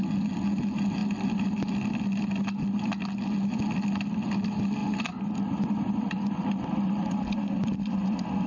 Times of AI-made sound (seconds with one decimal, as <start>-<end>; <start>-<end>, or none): 4.8-8.5

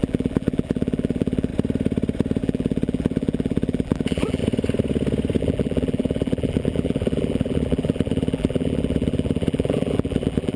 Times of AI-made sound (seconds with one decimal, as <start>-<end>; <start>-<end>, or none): 0.0-1.5; 2.4-4.4; 5.4-10.6

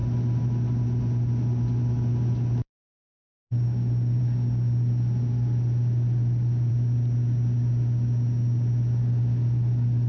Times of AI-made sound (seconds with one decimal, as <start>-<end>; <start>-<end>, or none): none

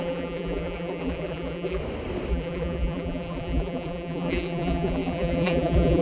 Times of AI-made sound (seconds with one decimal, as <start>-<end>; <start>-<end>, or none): 0.0-1.8; 2.3-6.0

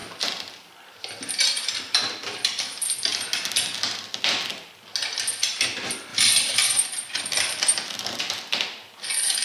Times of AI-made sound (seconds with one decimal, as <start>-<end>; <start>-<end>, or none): 0.0-2.6; 6.1-8.2

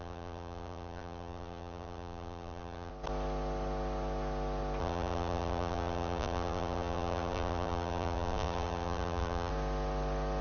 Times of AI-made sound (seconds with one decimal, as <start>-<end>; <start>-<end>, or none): 0.0-2.9; 4.8-9.5

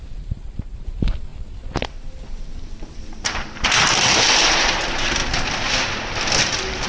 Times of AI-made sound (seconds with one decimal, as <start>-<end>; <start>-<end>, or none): 0.0-1.3; 2.8-5.2; 6.4-6.9